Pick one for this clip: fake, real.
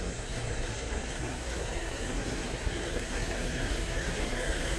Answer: fake